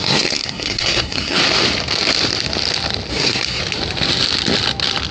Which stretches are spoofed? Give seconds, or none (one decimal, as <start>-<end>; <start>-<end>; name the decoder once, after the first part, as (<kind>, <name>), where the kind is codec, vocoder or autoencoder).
0.0-1.4 (codec, SNAC); 3.1-3.6